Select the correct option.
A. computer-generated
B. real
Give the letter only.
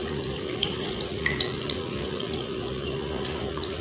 A